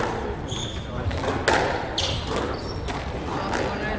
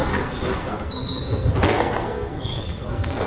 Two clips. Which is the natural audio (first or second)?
first